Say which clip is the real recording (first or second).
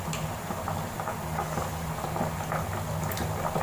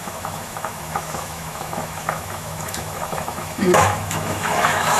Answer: first